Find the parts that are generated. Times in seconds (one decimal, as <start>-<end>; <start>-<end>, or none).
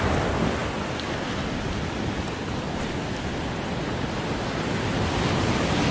none